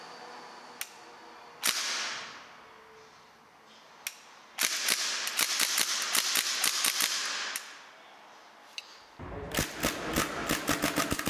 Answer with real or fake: real